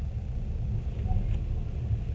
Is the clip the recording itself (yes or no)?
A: yes